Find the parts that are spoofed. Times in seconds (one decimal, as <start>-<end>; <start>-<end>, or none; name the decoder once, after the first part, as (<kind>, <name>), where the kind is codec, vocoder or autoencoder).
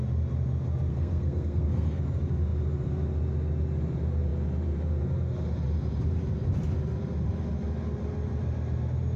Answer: 0.9-2.0 (codec, SNAC)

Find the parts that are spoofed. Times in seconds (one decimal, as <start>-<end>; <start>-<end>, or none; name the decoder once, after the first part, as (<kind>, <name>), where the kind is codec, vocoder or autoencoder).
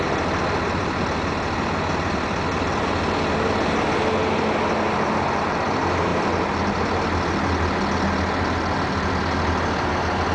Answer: none